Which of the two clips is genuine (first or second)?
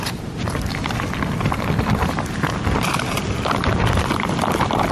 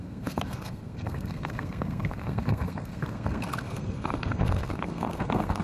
first